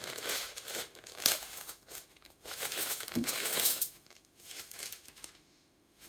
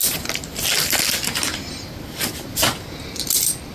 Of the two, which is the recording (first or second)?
second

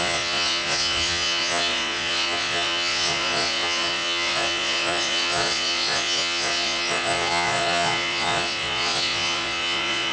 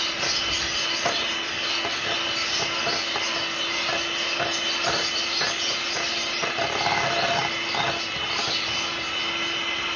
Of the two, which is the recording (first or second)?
second